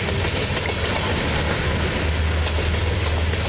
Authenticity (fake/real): real